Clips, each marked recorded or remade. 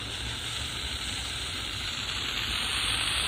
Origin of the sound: recorded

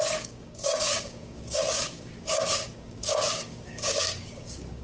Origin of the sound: remade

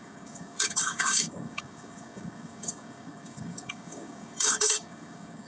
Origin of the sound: remade